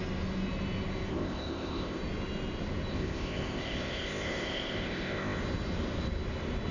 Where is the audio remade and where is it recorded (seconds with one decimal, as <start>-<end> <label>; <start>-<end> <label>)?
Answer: 0.0-1.1 recorded; 1.1-2.0 remade; 2.0-2.9 recorded; 2.9-5.4 remade; 5.4-6.7 recorded

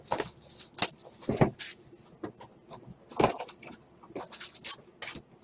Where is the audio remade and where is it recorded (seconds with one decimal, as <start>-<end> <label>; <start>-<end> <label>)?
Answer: 0.0-5.4 recorded

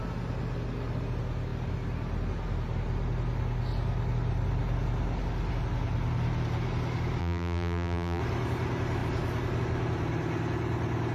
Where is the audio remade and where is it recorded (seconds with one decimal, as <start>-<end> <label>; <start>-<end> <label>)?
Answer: 0.0-7.2 recorded; 7.2-8.2 remade; 8.2-11.1 recorded